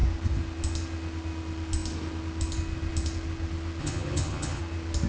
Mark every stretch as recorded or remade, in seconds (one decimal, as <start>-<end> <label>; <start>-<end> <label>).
0.0-3.8 recorded; 3.8-4.6 remade; 4.6-5.1 recorded